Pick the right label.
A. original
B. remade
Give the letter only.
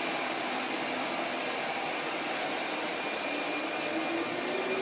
A